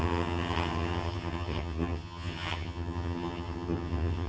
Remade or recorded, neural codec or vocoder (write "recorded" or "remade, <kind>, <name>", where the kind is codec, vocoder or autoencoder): remade, vocoder, HiFi-GAN